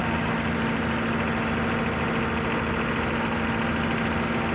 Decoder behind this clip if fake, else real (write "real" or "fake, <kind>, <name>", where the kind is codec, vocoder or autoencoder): real